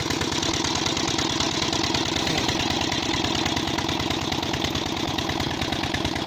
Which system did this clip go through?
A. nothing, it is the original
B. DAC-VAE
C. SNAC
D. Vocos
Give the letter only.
A